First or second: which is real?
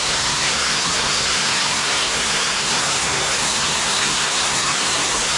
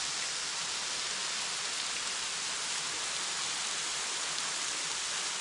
second